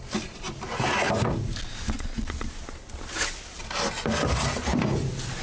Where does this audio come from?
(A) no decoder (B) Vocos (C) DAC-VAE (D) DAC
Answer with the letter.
A